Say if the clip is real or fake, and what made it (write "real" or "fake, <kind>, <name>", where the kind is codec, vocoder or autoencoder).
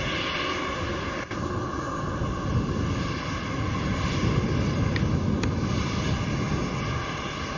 real